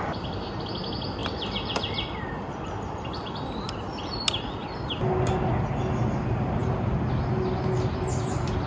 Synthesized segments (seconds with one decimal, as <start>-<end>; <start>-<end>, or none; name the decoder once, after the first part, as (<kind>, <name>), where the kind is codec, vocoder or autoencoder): none